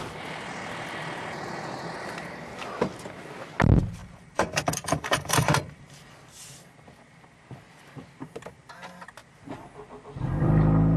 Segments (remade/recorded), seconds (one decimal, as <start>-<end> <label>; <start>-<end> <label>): 0.0-4.0 recorded; 4.0-6.1 remade; 6.1-11.0 recorded